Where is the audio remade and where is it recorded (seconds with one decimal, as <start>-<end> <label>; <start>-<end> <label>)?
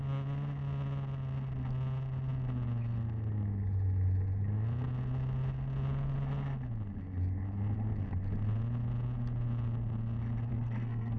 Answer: 0.0-10.5 recorded; 10.5-11.2 remade